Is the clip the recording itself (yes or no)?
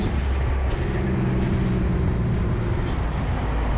yes